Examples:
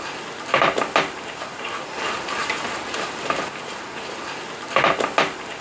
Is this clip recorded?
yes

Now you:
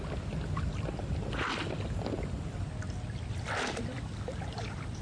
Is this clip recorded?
yes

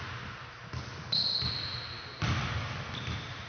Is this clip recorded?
yes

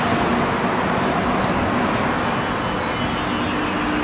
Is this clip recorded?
yes